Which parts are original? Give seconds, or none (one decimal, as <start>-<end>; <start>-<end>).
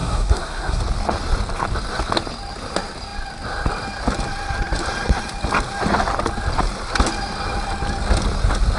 0.8-8.8